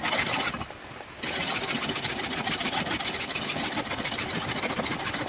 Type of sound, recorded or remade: recorded